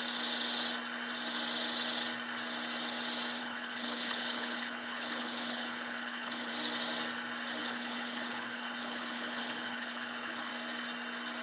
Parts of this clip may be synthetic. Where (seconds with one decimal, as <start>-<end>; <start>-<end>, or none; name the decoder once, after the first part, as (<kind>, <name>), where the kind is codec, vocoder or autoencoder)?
3.4-6.5 (codec, HILCodec); 7.6-10.5